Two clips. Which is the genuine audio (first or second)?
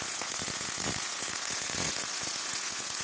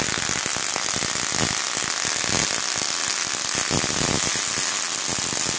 second